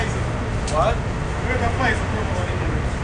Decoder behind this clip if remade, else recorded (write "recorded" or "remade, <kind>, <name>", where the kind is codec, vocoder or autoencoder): recorded